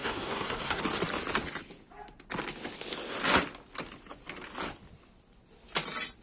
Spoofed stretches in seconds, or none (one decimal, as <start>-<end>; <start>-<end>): 0.0-0.8